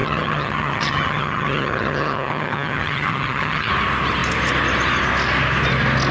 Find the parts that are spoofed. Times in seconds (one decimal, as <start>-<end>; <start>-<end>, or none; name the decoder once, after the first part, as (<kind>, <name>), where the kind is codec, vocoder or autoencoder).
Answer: 0.0-3.7 (vocoder, HiFi-GAN)